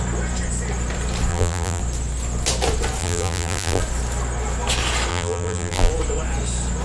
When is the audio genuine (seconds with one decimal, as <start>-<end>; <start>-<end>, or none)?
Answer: 0.0-1.3; 1.8-3.0; 3.8-5.1; 5.9-6.8